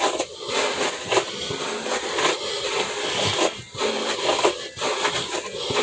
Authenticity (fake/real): real